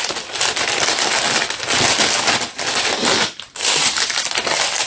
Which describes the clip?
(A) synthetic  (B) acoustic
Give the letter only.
B